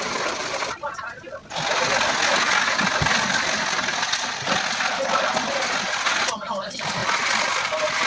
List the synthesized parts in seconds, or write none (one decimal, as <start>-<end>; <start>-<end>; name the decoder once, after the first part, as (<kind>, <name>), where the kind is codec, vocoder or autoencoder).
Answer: none